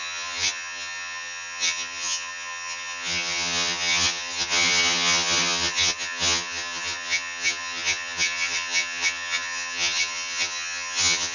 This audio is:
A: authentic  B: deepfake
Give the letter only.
B